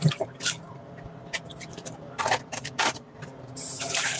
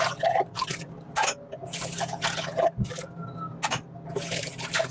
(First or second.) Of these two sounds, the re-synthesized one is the first